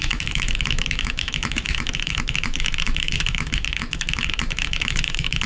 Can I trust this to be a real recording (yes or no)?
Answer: no